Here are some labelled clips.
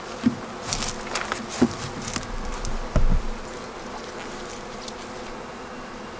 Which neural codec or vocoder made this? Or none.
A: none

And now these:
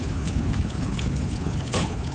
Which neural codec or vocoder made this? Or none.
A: codec, HILCodec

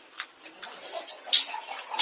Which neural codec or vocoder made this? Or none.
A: none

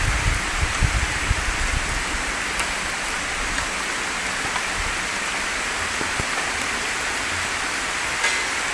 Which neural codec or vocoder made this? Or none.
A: none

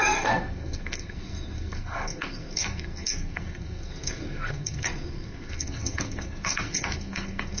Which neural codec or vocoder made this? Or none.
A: codec, SNAC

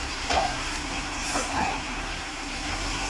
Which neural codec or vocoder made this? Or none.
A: codec, SNAC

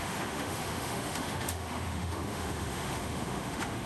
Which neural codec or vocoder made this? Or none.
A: autoencoder, DAC-VAE